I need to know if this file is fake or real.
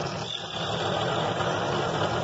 real